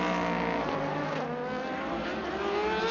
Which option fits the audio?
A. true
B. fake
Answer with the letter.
A